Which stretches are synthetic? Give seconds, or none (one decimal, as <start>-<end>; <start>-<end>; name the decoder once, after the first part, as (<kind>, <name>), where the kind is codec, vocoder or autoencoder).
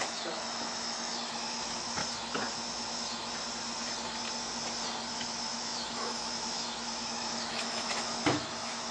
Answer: 0.0-2.0 (autoencoder, DAC-VAE); 5.1-8.9